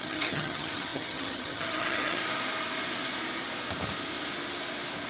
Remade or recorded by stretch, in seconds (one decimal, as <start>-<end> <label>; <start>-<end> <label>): 0.0-2.2 remade; 2.2-5.1 recorded